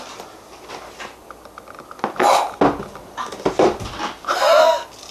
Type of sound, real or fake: real